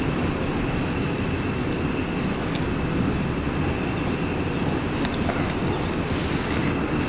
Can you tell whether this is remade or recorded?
recorded